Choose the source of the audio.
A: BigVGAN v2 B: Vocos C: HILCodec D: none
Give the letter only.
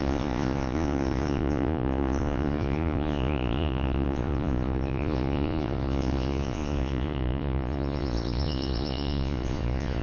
B